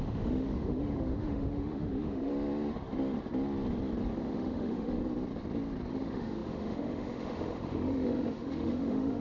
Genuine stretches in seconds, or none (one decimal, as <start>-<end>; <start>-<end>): 2.3-4.2; 5.0-5.9